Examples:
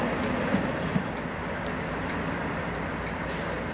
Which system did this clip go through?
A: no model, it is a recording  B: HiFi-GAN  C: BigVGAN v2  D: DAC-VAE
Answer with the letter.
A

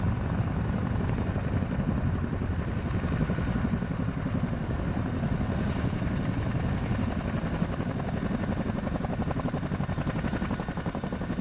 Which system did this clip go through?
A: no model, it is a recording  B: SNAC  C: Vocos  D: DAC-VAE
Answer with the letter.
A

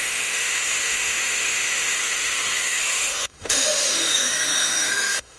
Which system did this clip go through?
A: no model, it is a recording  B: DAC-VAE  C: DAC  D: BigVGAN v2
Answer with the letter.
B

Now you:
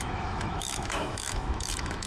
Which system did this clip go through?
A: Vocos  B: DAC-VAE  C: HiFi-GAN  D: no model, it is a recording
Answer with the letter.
B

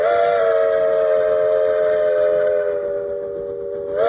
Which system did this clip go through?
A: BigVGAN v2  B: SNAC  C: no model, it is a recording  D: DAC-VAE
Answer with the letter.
C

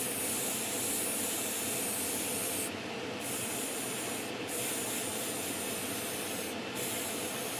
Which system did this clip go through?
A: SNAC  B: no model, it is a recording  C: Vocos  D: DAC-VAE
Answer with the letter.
B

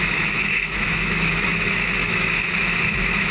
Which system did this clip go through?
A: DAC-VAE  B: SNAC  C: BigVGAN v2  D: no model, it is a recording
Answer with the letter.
A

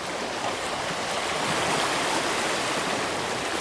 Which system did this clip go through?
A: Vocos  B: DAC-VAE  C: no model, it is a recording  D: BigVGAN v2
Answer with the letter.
C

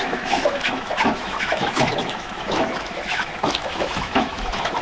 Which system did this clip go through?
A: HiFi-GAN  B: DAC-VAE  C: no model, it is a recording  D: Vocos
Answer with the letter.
B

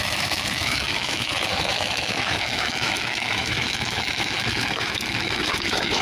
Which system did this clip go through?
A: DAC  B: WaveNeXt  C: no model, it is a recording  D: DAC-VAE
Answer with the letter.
D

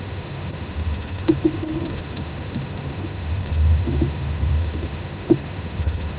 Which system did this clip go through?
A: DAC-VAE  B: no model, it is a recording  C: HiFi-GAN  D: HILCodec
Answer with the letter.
A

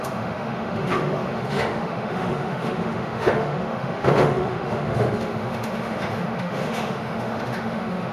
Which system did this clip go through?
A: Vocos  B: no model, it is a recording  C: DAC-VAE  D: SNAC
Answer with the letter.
C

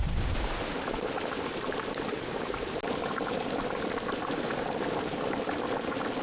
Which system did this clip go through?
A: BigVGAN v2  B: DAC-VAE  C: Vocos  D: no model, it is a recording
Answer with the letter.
D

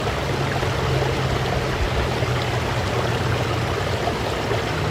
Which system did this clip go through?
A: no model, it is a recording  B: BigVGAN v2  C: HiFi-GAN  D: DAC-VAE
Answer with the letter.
A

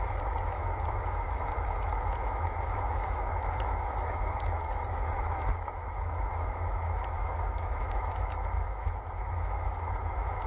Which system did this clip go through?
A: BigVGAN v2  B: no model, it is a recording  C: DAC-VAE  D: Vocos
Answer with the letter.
C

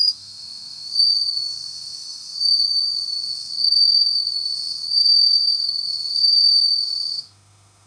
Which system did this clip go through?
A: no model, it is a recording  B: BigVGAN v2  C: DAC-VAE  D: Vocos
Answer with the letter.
C